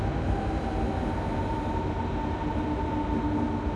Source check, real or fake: real